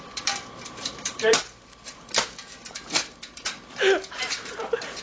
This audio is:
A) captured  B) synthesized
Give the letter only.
B